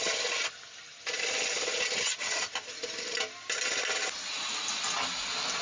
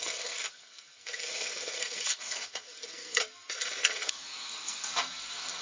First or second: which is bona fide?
first